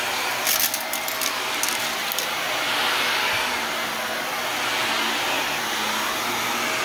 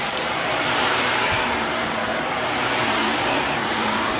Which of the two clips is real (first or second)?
first